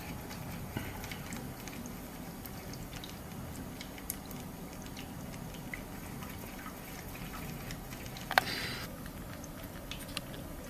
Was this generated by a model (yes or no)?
no